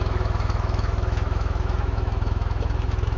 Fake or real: fake